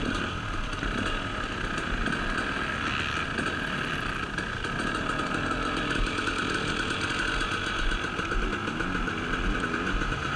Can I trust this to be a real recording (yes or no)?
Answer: yes